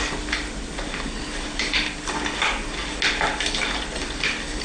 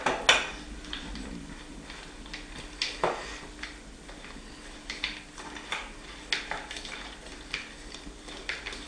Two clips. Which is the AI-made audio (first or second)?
first